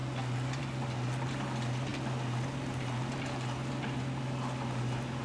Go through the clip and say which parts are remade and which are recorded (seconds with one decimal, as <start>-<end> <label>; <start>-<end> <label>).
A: 0.0-5.2 recorded